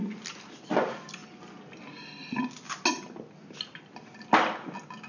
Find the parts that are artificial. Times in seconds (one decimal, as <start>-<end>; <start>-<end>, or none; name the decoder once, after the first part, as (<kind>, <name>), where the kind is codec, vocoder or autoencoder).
none